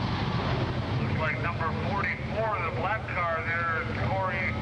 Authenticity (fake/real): real